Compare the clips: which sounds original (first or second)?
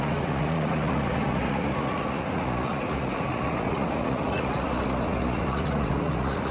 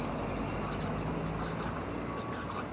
second